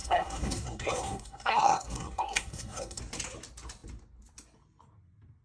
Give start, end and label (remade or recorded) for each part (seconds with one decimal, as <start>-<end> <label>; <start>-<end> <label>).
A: 0.0-3.0 remade; 3.0-5.4 recorded